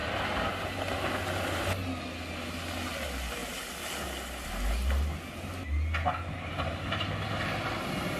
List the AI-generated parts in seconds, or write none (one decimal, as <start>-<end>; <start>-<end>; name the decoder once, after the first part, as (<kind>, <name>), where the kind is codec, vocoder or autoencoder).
none